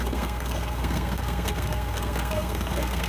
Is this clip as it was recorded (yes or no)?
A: no